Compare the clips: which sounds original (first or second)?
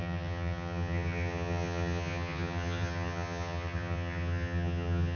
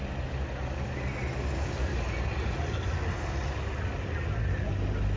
second